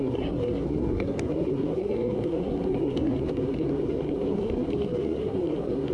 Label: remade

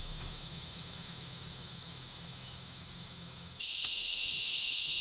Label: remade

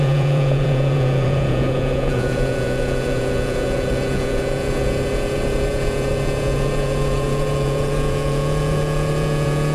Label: remade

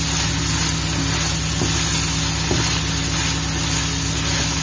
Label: recorded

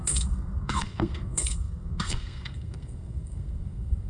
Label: remade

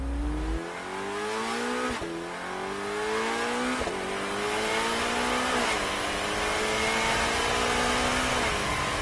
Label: recorded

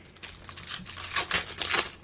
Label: recorded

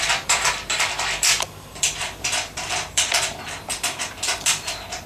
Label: remade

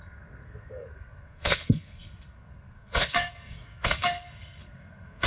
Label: remade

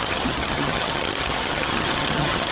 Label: remade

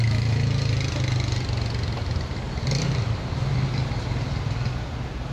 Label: recorded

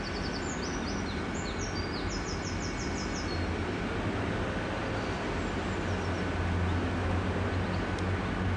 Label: recorded